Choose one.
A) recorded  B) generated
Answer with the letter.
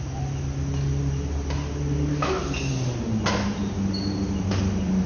A